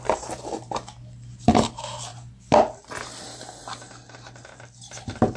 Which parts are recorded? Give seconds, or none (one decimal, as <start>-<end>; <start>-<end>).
0.0-5.4

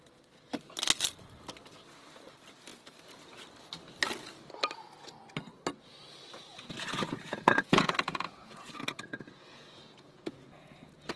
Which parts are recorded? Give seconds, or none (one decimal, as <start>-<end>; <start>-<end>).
0.0-6.5

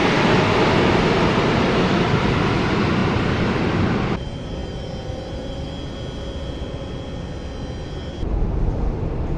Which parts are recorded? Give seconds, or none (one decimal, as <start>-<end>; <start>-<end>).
0.0-9.4